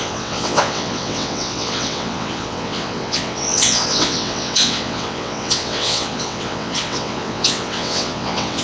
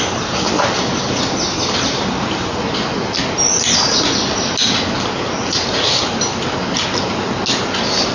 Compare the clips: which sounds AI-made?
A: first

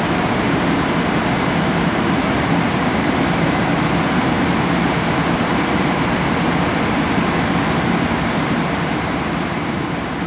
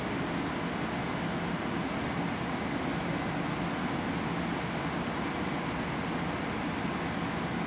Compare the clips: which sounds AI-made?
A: first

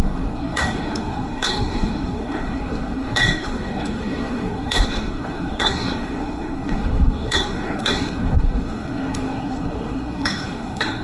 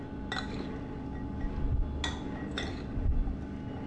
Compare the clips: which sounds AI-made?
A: first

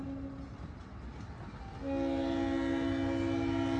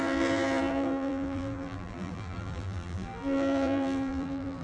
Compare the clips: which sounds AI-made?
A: second